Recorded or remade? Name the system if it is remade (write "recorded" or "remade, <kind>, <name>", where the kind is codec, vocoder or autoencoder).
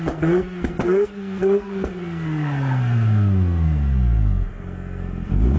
remade, codec, SNAC